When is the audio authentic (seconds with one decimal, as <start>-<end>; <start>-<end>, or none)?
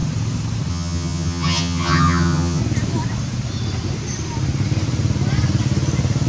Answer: 0.0-0.7; 2.6-6.3